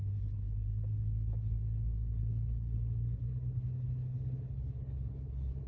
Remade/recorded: remade